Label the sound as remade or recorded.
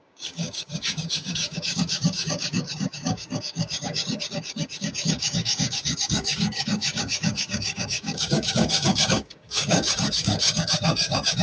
remade